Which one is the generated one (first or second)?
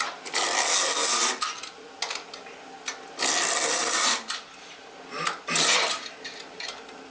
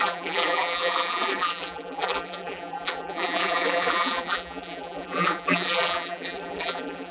second